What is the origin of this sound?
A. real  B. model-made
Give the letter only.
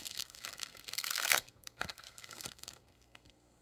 B